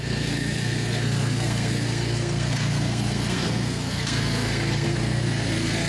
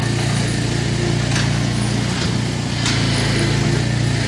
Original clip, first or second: second